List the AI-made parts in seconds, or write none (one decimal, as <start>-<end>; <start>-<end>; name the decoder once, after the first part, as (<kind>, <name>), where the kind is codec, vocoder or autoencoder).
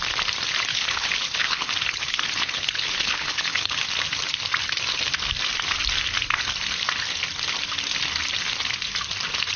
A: 0.7-3.8 (codec, HILCodec)